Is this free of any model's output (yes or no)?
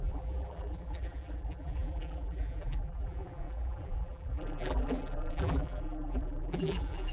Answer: no